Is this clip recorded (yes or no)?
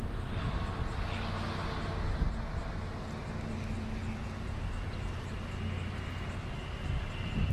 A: yes